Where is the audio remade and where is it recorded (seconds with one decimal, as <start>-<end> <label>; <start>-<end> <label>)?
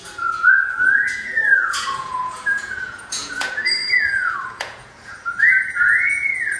0.0-6.6 remade